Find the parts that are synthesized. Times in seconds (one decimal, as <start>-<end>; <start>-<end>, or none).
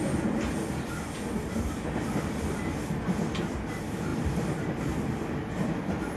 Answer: none